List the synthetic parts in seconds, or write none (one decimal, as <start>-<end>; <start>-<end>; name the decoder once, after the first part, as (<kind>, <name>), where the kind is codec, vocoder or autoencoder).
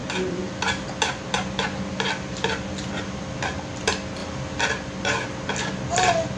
0.0-3.8 (vocoder, BigVGAN v2); 4.2-4.7